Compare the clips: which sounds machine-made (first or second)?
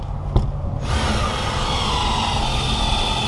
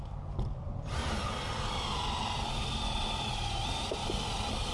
second